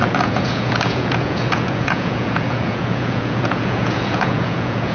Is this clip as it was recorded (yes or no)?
no